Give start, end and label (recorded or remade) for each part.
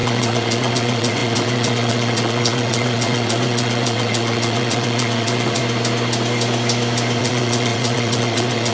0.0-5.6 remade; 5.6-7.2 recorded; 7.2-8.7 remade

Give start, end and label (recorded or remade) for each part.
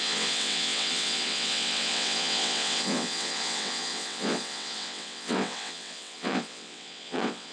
0.0-7.5 remade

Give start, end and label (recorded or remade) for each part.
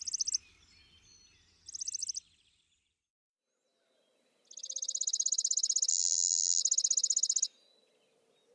0.0-5.9 recorded; 5.9-6.6 remade; 6.6-8.5 recorded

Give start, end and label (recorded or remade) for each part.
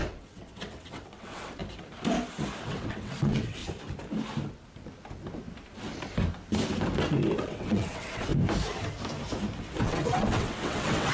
0.0-1.6 remade; 1.6-2.6 recorded; 2.6-3.6 remade; 3.6-7.4 recorded; 7.4-8.3 remade; 8.3-9.8 recorded; 9.8-11.1 remade